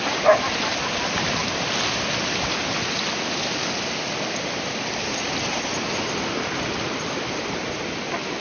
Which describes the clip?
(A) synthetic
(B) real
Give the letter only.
B